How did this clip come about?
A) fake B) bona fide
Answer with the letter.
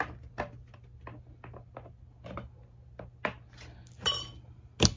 B